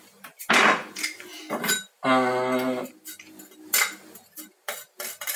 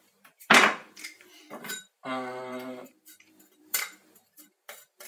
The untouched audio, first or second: first